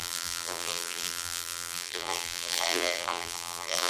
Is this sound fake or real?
fake